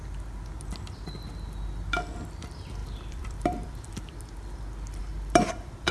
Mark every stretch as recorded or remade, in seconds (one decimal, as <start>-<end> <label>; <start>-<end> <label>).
0.0-2.8 recorded; 2.8-3.9 remade; 3.9-5.0 recorded; 5.0-5.9 remade